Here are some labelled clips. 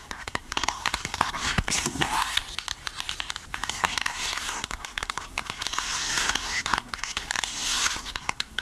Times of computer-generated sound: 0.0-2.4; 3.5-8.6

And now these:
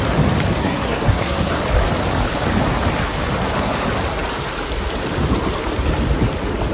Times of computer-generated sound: 0.6-1.6

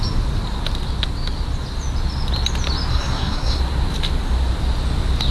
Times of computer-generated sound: 2.9-3.6